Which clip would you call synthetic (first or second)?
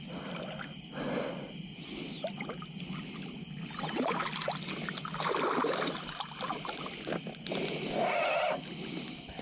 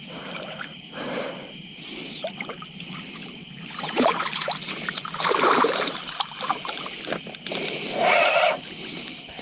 second